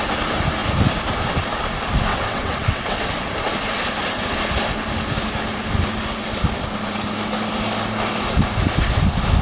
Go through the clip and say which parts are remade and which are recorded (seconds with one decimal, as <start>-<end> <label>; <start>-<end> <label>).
0.0-2.1 recorded; 2.1-3.1 remade; 3.1-9.4 recorded